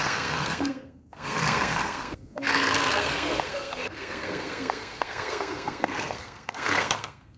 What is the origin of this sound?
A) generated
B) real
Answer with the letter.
A